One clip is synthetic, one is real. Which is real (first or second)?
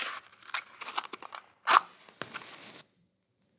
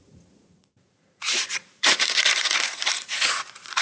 first